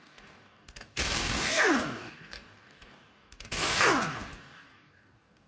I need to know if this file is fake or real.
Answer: fake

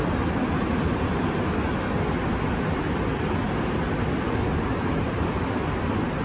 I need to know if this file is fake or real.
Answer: real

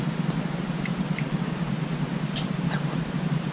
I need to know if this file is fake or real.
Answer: real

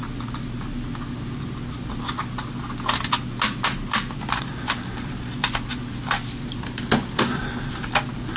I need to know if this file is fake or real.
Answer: real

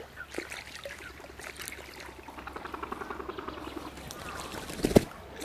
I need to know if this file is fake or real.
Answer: real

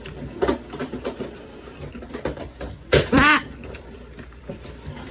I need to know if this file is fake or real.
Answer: fake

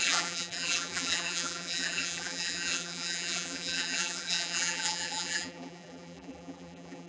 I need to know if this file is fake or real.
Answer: fake